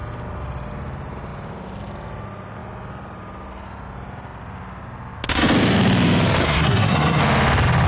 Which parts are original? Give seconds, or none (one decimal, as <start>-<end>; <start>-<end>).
0.0-6.4; 7.2-7.9